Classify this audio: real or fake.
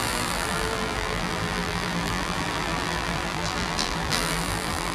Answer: fake